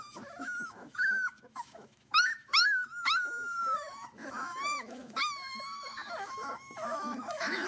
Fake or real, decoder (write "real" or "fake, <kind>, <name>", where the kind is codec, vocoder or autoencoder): fake, autoencoder, DAC-VAE